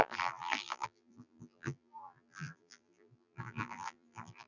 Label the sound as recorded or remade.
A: remade